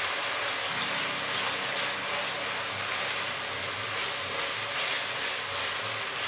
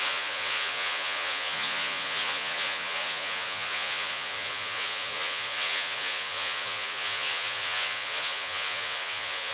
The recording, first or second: first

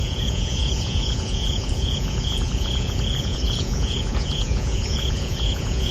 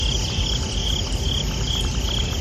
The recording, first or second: second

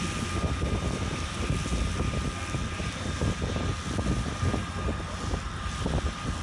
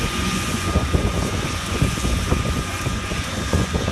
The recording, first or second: first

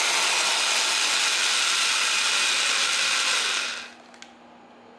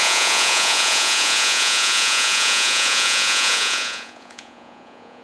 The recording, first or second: first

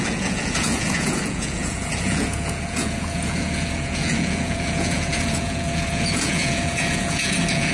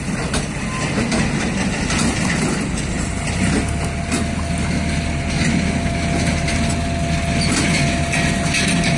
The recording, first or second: second